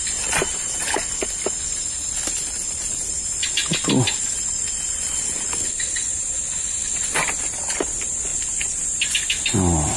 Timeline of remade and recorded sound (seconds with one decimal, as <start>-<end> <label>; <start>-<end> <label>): 0.0-10.0 recorded